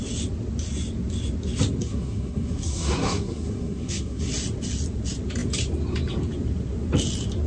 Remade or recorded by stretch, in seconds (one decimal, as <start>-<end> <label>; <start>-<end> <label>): 0.0-1.8 recorded; 1.8-4.3 remade; 4.3-7.5 recorded